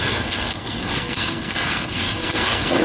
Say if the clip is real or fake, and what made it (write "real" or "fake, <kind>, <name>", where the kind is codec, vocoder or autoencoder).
fake, codec, SNAC